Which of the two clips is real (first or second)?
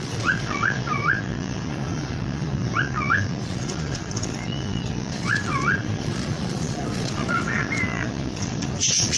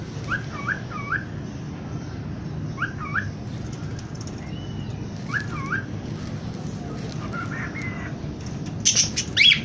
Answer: second